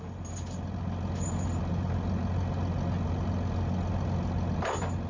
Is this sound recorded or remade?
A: recorded